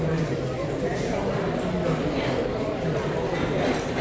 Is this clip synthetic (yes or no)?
no